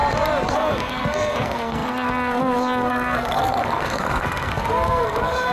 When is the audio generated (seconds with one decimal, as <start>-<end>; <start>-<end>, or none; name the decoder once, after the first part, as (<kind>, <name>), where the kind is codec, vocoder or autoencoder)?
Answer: 0.5-5.5 (codec, SNAC)